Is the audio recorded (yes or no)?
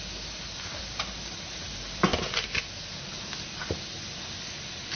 yes